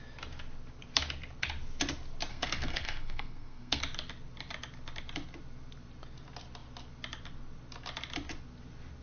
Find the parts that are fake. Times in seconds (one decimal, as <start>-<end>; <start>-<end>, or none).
2.3-3.8